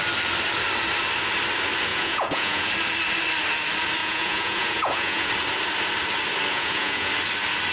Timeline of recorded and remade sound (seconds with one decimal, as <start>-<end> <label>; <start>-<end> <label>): 0.0-1.9 recorded; 1.9-2.7 remade; 2.7-4.0 recorded; 4.0-5.3 remade; 5.3-6.5 recorded; 6.5-7.1 remade; 7.1-7.7 recorded